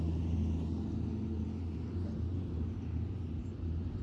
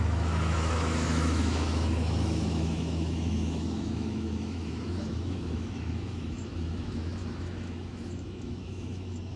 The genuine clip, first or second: first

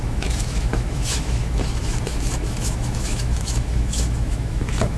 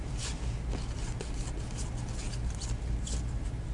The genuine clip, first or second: second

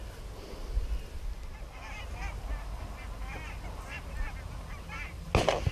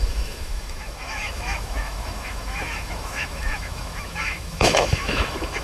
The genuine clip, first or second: first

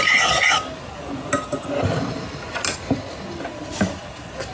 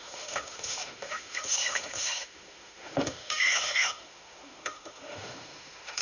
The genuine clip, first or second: first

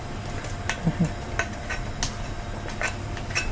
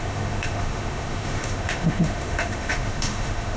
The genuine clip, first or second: first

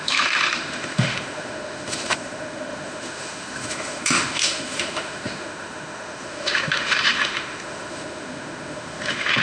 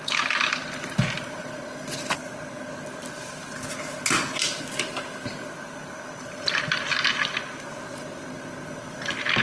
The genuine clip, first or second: second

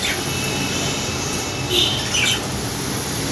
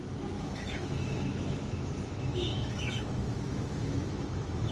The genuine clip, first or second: first